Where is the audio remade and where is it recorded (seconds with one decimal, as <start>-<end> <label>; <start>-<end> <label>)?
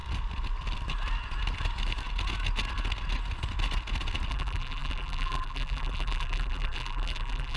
0.0-4.3 recorded; 4.3-7.6 remade